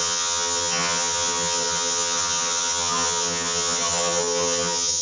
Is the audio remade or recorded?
remade